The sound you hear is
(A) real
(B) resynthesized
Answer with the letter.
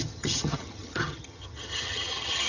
B